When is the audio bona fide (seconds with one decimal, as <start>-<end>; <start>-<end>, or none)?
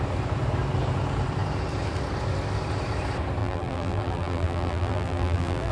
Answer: 0.0-3.4